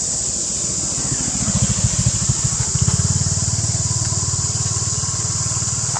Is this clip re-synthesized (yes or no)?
no